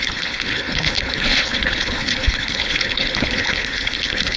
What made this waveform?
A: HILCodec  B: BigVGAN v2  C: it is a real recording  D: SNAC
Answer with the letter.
A